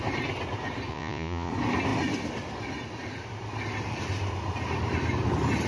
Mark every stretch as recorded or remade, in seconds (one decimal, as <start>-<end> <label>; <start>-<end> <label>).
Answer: 0.0-0.9 recorded; 0.9-1.5 remade; 1.5-5.7 recorded